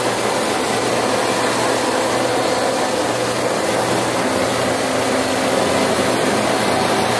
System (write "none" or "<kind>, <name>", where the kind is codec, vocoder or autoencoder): none